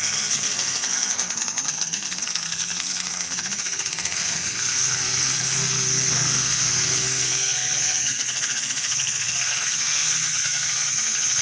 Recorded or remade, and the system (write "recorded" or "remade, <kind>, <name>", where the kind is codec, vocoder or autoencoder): remade, codec, SNAC